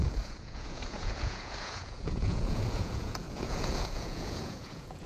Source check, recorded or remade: remade